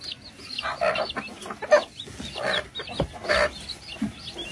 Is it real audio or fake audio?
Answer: real